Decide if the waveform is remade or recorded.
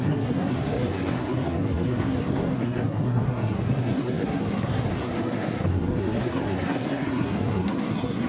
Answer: remade